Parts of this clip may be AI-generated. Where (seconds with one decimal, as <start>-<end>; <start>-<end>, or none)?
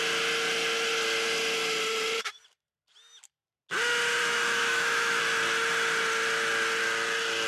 4.2-5.2